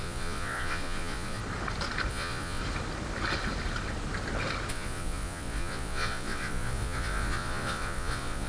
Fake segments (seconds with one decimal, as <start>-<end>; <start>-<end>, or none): 0.0-1.4; 2.1-2.6; 4.7-8.5